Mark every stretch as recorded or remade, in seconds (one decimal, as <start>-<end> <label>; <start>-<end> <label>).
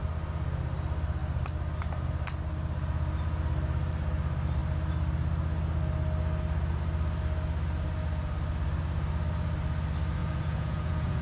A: 0.0-10.2 recorded; 10.2-11.2 remade